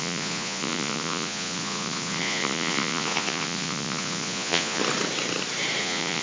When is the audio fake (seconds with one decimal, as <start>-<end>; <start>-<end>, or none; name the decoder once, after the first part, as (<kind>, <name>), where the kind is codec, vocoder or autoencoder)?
0.0-4.8 (vocoder, Vocos); 5.8-6.2